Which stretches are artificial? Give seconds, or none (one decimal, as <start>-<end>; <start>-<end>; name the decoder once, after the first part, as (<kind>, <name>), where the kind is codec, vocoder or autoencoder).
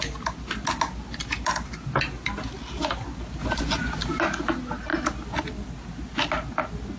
none